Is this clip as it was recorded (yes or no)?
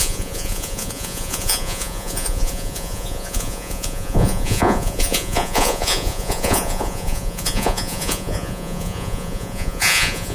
no